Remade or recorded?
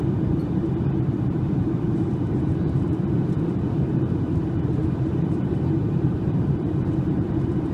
remade